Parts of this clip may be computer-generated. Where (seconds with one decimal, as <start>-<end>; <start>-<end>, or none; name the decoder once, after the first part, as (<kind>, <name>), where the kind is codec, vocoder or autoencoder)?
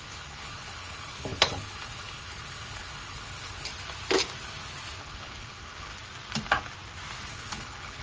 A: 0.0-3.7 (codec, HILCodec); 5.0-5.9; 7.3-8.0